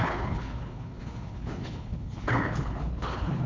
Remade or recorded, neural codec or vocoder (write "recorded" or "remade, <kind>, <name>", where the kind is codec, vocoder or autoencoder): remade, codec, HILCodec